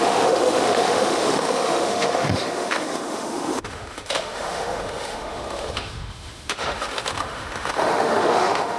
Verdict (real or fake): fake